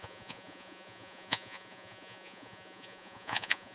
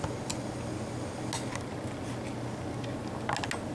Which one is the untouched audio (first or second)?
second